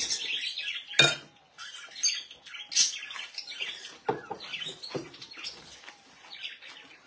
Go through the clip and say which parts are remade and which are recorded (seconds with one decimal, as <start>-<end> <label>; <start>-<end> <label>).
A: 0.0-7.1 recorded